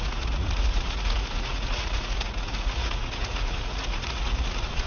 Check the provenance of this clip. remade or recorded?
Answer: remade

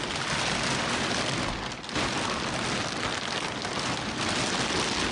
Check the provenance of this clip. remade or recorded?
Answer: recorded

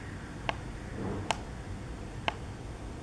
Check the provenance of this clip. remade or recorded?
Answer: recorded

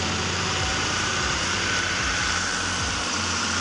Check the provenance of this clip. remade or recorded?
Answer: remade